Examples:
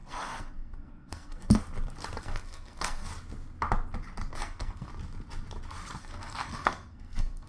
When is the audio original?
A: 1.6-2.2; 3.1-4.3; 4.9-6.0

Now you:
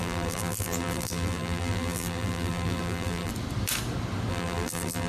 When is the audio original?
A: 3.3-4.3

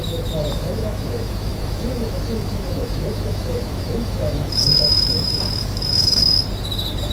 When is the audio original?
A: 6.2-7.1